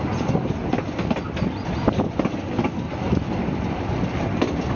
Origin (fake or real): real